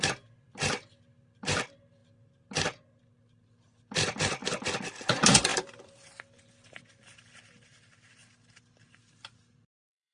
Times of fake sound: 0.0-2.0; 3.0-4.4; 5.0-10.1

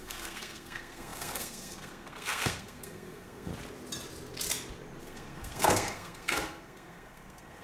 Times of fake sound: 0.0-3.5; 5.0-7.6